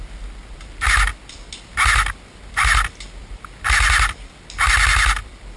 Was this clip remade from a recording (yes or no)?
no